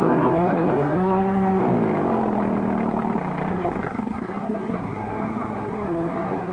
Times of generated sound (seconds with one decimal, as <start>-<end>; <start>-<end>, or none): 0.0-1.6; 3.5-6.5